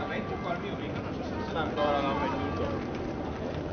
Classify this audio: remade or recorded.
recorded